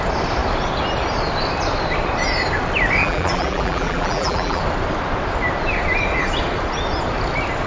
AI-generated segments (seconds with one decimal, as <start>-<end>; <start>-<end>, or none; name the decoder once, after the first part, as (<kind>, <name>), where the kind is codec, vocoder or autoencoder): 3.0-4.6 (vocoder, BigVGAN v2)